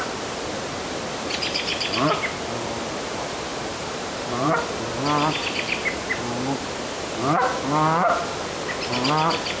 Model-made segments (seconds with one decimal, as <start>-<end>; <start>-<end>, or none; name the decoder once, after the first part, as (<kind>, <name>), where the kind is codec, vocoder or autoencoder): 3.5-4.6 (vocoder, BigVGAN v2)